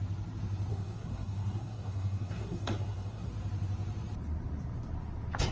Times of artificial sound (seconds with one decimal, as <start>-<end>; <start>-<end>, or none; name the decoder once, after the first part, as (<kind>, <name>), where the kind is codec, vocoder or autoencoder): 0.7-3.3 (codec, SNAC)